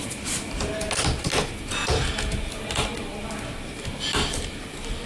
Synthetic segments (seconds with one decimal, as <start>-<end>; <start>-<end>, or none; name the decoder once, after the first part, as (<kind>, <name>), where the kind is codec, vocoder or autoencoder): none